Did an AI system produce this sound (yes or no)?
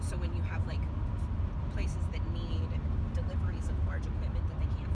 no